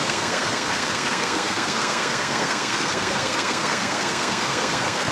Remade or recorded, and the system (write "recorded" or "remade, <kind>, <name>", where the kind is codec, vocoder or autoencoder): remade, codec, SNAC